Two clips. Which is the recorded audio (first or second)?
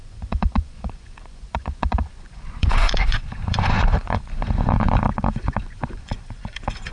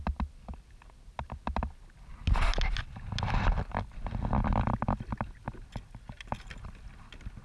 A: second